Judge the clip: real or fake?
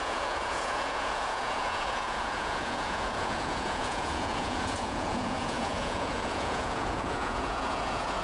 fake